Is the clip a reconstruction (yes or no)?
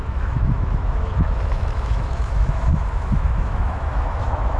yes